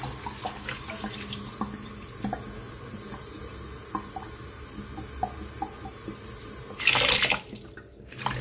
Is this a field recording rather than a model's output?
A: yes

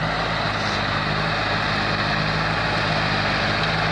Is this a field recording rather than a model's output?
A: yes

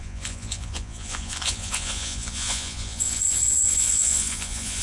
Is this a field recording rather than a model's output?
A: no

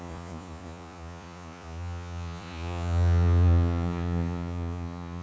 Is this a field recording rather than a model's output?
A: no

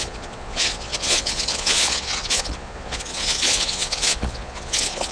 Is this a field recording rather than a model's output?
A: no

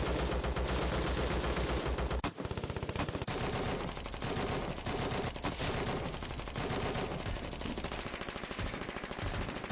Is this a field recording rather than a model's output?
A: yes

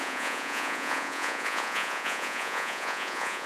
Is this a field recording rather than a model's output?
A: no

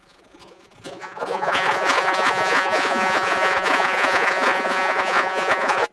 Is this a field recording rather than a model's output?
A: no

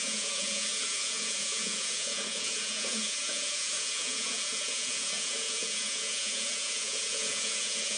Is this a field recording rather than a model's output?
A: no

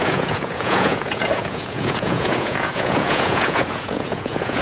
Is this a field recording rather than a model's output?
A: no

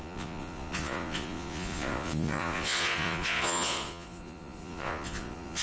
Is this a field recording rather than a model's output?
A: no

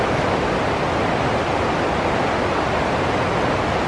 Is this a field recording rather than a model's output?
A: yes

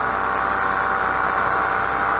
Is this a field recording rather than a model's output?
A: yes